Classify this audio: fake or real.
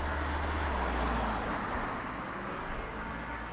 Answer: real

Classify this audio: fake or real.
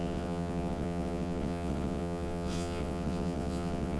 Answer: fake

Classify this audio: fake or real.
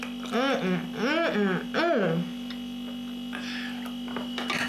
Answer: real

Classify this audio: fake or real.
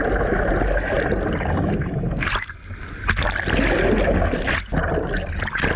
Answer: real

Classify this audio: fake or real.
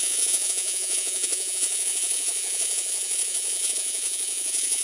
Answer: fake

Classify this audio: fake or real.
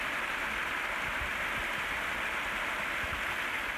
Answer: real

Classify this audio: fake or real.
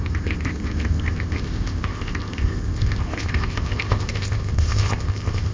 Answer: fake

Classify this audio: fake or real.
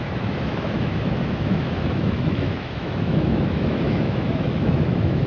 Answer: fake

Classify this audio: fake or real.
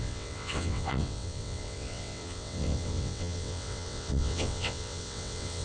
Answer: fake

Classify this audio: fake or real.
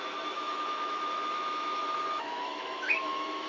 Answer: fake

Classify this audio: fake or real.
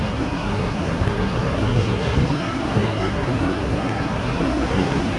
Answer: fake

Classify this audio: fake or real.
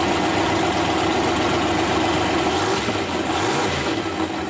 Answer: real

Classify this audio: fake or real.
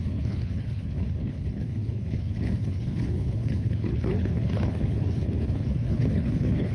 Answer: fake